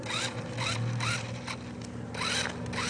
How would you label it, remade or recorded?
recorded